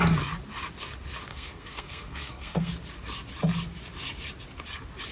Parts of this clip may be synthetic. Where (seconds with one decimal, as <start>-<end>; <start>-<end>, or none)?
1.3-2.7